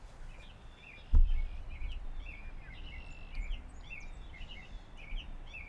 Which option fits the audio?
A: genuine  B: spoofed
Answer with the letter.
A